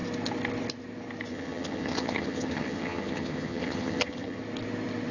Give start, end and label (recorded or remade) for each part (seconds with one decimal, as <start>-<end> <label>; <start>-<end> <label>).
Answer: 0.0-1.3 recorded; 1.3-4.4 remade; 4.4-5.1 recorded